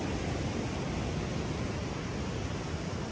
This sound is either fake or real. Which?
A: real